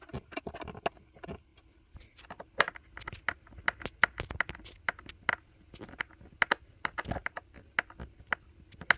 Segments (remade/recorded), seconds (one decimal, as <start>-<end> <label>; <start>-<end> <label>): 0.0-9.0 recorded

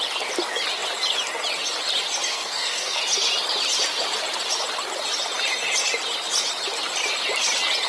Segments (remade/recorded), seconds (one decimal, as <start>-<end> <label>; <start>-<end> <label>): 0.0-2.3 recorded; 2.3-3.0 remade; 3.0-7.9 recorded